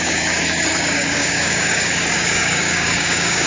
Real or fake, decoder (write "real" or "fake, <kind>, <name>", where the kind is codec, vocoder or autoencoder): fake, codec, DAC